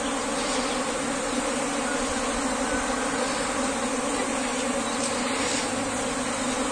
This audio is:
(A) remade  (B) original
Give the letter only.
B